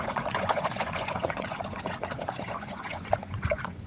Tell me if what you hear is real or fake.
fake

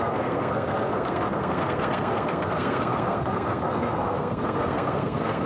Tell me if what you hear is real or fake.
fake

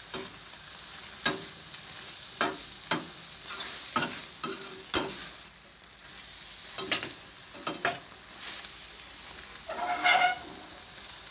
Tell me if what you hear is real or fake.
real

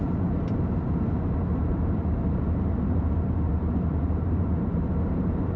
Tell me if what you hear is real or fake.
fake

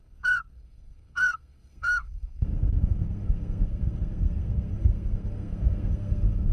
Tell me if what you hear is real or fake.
fake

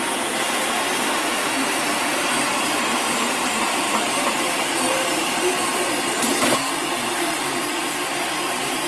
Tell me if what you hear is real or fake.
fake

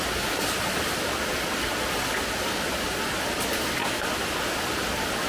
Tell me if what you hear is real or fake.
real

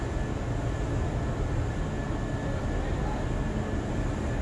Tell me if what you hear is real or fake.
real